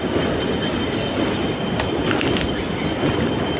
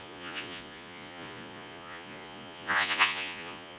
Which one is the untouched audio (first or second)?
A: first